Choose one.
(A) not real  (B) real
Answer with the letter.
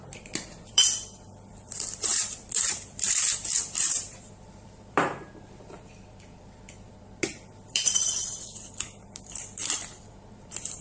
A